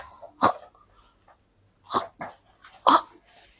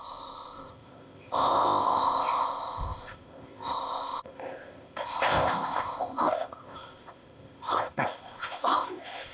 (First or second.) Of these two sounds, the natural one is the first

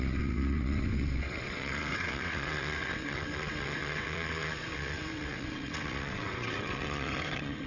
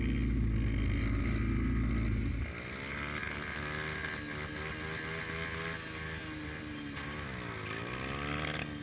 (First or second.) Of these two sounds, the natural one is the second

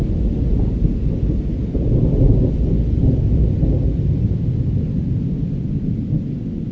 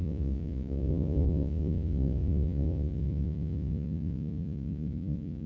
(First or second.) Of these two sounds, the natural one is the first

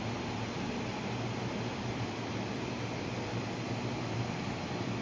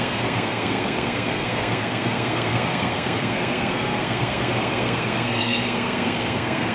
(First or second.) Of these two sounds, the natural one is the first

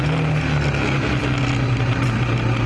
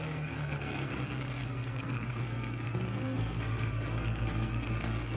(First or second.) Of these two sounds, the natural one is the first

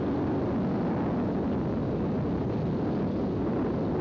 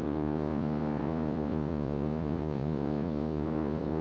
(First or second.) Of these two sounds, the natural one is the first